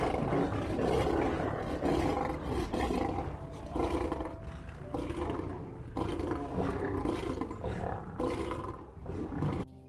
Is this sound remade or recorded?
recorded